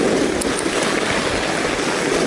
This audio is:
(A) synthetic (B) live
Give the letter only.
B